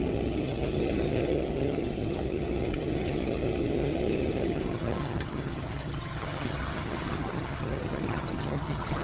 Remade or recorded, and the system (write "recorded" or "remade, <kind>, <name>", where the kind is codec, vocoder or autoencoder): remade, vocoder, HiFi-GAN